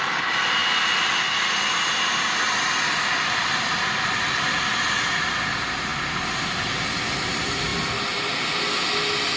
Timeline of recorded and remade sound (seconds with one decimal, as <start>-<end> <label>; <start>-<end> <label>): 0.0-9.4 recorded